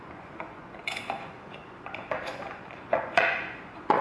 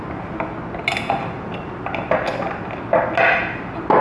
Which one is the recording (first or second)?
second